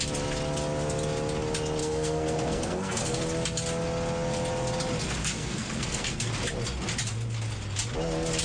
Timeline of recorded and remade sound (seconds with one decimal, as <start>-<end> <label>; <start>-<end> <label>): 0.0-1.8 recorded; 1.8-3.2 remade; 3.2-5.2 recorded; 5.2-6.3 remade; 6.3-8.4 recorded